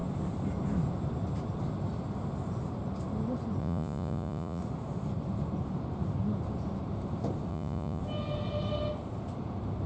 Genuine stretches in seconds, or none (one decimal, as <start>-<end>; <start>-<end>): 0.0-3.6; 4.6-7.5; 8.0-9.9